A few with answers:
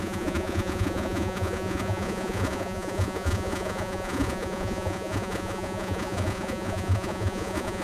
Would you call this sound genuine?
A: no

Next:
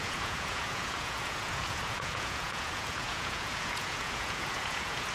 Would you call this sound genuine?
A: no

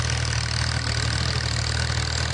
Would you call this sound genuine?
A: yes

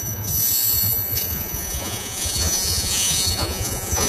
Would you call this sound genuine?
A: no